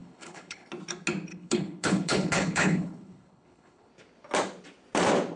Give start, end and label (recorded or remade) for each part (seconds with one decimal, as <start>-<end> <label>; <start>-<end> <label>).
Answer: 0.0-0.7 remade; 0.7-1.3 recorded; 1.3-3.9 remade; 3.9-5.4 recorded